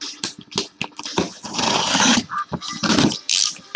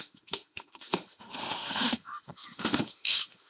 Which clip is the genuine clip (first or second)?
first